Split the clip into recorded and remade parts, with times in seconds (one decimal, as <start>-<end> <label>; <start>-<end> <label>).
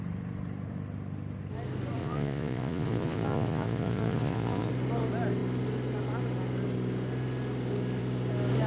0.0-2.0 recorded; 2.0-4.7 remade; 4.7-8.7 recorded